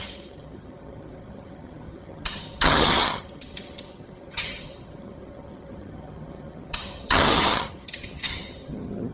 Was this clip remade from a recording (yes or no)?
yes